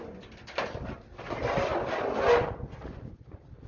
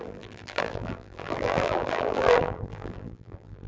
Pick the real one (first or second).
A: first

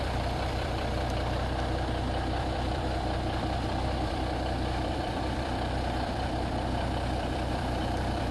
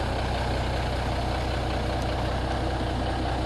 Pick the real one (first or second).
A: second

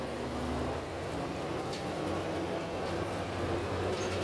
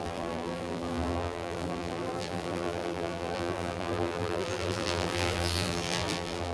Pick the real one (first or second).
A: first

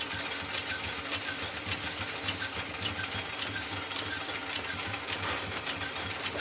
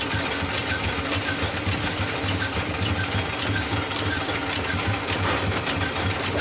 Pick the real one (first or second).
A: first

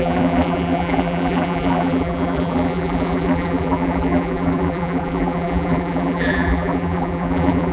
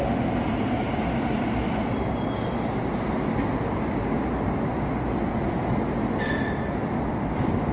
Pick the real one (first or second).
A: second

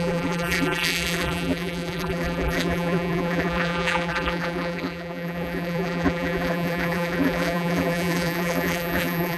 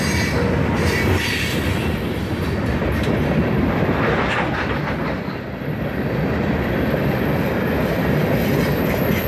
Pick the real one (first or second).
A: second